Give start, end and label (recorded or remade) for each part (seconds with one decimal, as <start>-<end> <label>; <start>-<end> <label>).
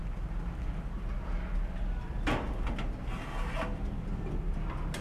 0.0-5.0 recorded